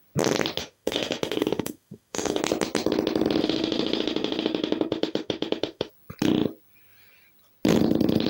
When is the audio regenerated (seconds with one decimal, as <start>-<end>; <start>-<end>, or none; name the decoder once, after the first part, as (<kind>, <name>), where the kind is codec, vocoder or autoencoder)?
0.6-2.4 (autoencoder, DAC-VAE); 3.4-5.9